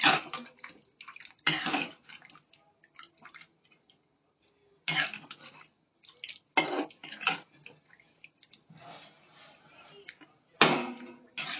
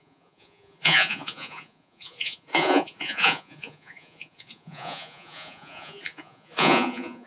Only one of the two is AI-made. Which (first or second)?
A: second